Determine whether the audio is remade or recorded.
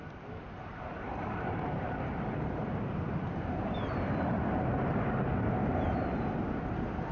remade